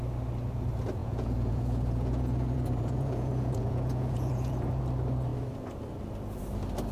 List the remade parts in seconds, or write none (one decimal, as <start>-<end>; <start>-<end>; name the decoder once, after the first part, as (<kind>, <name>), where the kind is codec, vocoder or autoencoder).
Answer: 1.0-4.8 (vocoder, Vocos)

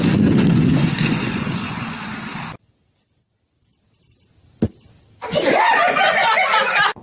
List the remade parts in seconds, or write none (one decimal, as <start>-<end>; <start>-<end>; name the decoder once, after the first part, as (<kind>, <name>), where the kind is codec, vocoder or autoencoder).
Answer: 0.0-2.3 (vocoder, Vocos); 5.5-7.0

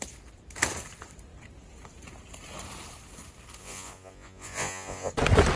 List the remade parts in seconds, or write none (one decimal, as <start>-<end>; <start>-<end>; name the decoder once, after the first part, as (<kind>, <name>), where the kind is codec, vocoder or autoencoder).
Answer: 3.6-5.1 (vocoder, Vocos)